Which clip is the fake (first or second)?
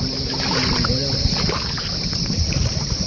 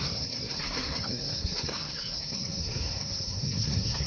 second